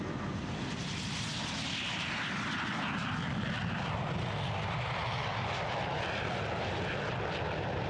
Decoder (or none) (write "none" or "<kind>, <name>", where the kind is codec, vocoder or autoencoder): none